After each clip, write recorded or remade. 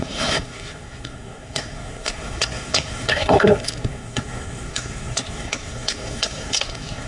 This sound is remade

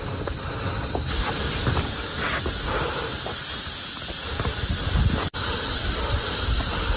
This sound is recorded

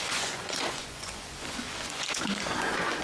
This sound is remade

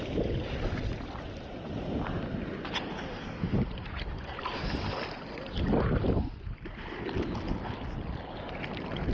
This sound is recorded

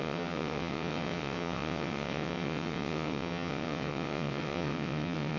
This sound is remade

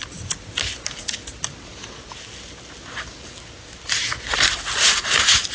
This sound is recorded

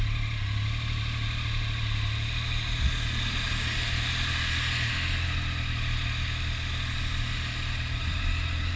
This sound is recorded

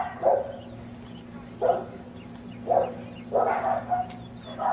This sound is recorded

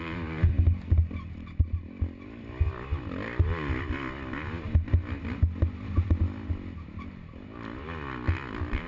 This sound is recorded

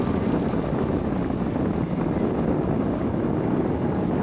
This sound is recorded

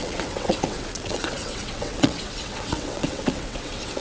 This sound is remade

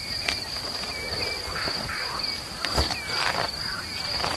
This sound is recorded